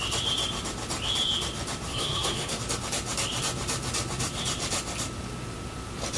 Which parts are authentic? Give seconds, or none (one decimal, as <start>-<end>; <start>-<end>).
0.0-1.9; 2.6-6.2